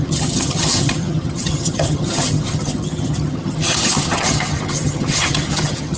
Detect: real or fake fake